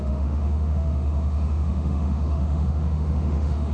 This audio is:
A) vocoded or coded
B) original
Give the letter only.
A